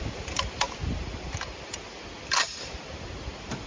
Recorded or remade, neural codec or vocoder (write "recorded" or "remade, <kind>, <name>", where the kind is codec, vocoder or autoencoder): remade, vocoder, BigVGAN v2